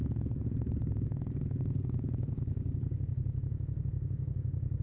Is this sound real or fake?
fake